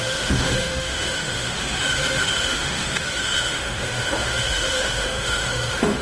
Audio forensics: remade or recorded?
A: remade